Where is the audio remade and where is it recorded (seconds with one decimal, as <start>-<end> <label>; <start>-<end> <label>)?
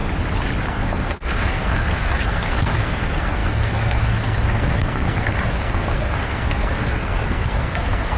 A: 0.0-0.7 recorded; 0.7-8.2 remade